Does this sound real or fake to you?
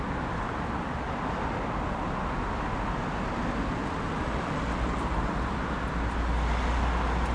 real